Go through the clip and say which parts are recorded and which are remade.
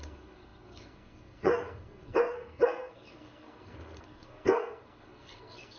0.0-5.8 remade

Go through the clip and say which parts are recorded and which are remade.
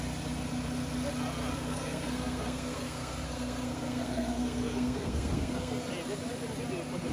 0.0-1.5 recorded; 1.5-5.8 remade; 5.8-7.1 recorded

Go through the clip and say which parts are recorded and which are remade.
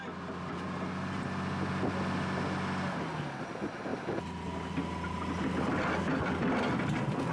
0.0-7.3 recorded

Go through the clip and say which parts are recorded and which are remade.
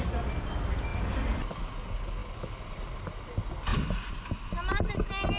0.0-5.4 recorded